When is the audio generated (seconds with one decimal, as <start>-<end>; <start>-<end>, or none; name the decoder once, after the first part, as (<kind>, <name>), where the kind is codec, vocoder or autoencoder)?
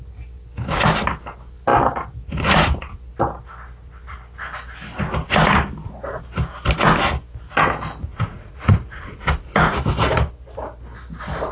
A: 8.1-9.3 (vocoder, Vocos)